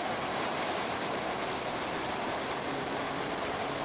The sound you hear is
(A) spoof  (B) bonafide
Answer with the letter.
B